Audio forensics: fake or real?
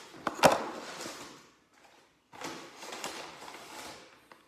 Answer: real